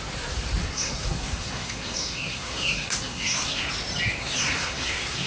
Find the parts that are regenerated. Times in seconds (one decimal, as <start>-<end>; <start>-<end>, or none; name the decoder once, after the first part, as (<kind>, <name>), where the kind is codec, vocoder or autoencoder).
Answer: 0.6-3.7 (codec, SNAC); 4.2-5.3